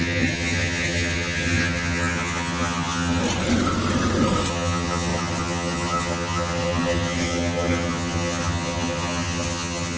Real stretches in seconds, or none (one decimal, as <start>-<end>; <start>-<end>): 3.2-4.5